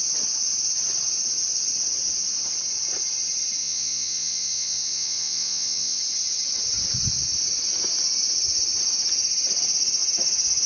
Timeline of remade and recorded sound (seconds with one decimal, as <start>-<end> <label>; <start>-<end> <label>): 0.0-3.6 recorded; 3.6-6.0 remade; 6.0-10.7 recorded